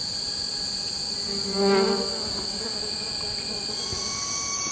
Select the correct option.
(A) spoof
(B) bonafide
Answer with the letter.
B